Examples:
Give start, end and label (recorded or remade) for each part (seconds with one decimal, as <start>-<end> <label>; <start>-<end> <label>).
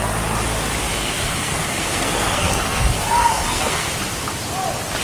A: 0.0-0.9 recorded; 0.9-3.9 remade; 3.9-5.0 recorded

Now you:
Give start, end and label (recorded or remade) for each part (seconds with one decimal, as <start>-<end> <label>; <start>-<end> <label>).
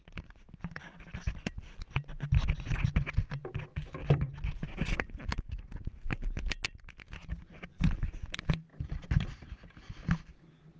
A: 0.0-8.7 recorded; 8.7-9.3 remade; 9.3-10.8 recorded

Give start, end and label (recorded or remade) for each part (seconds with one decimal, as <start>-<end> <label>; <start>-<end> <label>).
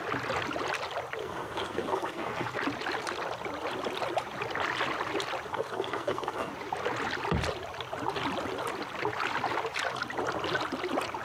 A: 0.0-1.2 recorded; 1.2-2.6 remade; 2.6-5.5 recorded; 5.5-6.5 remade; 6.5-11.2 recorded